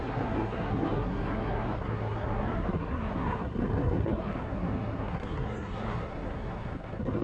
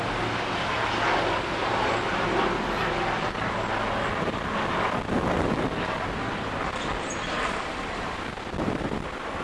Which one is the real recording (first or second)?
second